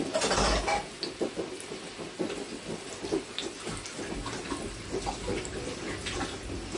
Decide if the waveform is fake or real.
real